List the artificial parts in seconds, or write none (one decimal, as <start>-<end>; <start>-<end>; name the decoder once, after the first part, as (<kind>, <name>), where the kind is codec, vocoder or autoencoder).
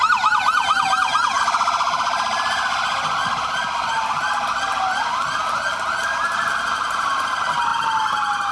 none